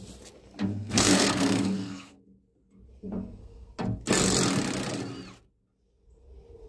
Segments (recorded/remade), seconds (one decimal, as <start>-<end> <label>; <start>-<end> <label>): 0.0-0.7 recorded; 0.7-2.4 remade; 2.4-3.0 recorded; 3.0-3.7 remade; 3.7-6.7 recorded